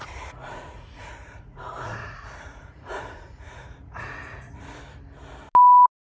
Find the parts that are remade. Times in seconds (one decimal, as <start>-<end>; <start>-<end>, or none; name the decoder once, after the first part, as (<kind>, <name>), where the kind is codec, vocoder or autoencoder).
0.0-4.8 (vocoder, Vocos)